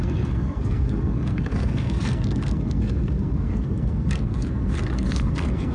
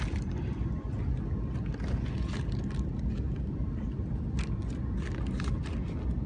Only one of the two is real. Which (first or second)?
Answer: second